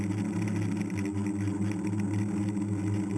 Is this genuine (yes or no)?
yes